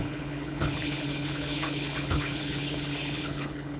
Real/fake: fake